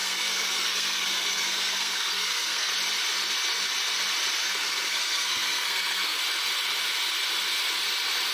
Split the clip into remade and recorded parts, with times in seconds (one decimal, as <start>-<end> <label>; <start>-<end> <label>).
0.0-2.7 remade; 2.7-4.4 recorded; 4.4-6.2 remade; 6.2-8.3 recorded